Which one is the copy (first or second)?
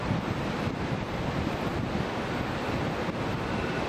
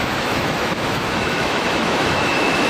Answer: second